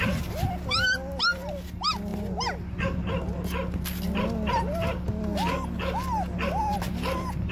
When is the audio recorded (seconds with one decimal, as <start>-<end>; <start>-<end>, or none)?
0.0-7.5